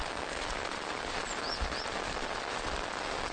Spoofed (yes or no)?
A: no